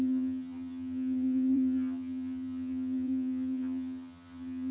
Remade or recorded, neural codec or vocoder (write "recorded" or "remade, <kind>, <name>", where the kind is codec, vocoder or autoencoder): remade, vocoder, HiFi-GAN